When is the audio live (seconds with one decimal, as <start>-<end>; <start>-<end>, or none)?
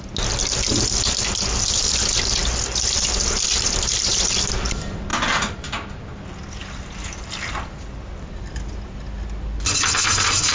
0.0-2.4; 4.3-10.5